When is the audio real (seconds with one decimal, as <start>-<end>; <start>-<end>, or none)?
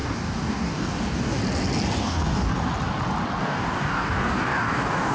1.4-2.0; 2.5-3.4